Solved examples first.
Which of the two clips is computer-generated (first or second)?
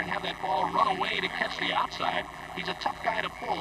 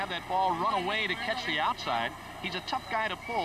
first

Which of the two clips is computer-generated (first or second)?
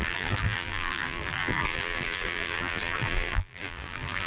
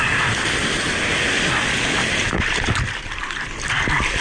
first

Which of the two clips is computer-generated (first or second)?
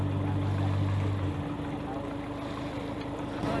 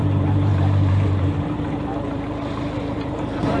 second